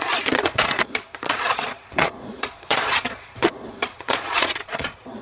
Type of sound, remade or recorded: remade